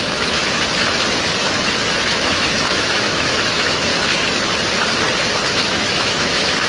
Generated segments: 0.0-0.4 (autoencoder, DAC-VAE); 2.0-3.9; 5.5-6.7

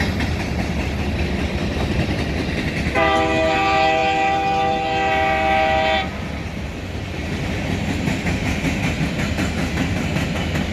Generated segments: none

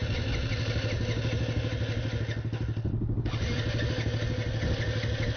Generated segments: none

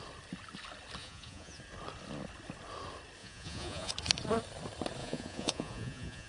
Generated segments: 1.0-1.6 (vocoder, Vocos); 3.2-3.9; 5.0-6.3

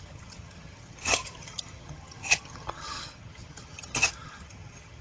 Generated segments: 0.0-5.0 (vocoder, HiFi-GAN)

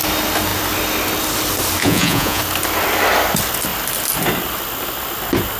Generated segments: 1.8-2.4 (vocoder, Vocos)